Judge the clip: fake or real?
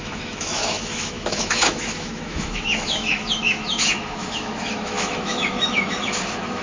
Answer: fake